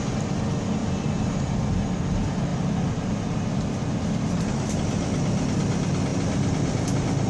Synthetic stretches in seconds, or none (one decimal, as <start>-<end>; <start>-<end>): 0.8-1.8; 2.5-4.7; 6.1-6.8